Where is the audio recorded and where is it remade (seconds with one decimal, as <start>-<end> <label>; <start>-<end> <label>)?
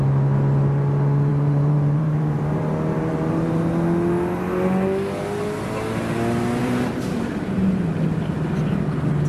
0.0-1.3 recorded; 1.3-3.7 remade; 3.7-6.6 recorded; 6.6-7.9 remade; 7.9-9.3 recorded